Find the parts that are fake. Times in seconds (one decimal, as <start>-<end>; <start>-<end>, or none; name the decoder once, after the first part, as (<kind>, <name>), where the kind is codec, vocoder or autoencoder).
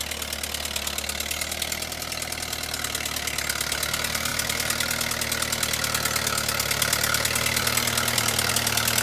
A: none